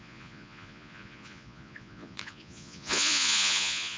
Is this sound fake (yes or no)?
yes